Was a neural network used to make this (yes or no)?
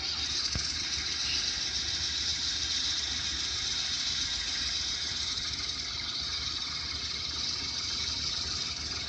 no